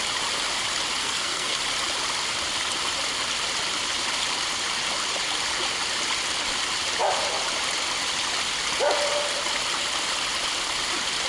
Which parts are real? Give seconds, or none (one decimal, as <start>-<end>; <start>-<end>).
0.0-1.0; 1.6-11.3